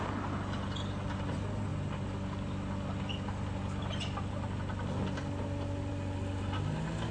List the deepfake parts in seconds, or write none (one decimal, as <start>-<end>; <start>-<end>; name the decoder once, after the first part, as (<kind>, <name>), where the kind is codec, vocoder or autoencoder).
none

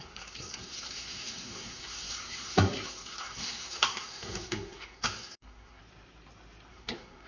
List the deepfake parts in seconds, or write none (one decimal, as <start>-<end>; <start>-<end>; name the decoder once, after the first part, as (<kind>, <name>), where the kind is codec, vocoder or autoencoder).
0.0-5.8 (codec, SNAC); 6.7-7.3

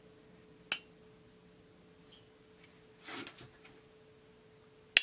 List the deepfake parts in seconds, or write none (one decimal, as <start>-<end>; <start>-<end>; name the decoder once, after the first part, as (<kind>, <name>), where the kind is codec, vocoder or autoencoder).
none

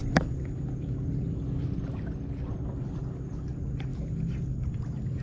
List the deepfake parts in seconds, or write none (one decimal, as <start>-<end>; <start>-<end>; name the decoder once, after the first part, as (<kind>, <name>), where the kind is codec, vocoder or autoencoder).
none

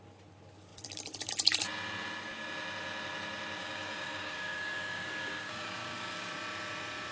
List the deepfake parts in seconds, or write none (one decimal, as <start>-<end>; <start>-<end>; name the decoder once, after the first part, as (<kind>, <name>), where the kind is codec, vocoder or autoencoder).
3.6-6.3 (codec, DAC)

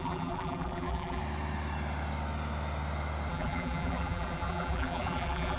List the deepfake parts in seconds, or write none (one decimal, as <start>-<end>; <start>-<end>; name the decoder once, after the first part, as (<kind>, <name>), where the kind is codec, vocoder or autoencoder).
0.0-1.2 (vocoder, BigVGAN v2); 3.3-5.6

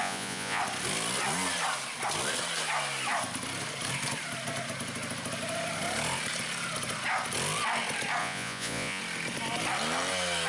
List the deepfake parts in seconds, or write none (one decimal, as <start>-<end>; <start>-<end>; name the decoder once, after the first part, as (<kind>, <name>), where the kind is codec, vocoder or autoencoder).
0.0-0.6 (vocoder, Vocos); 8.2-9.0

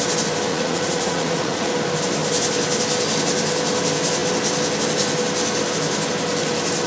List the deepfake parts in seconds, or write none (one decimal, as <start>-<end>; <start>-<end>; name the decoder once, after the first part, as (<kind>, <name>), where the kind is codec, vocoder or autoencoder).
0.5-1.7 (vocoder, Vocos)